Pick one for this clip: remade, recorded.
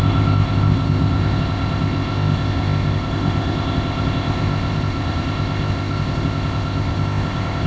remade